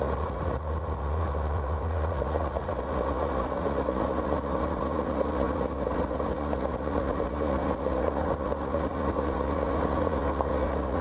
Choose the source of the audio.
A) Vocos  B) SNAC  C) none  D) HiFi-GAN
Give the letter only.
A